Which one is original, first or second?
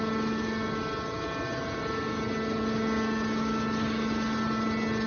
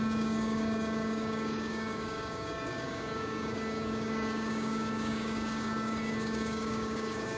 first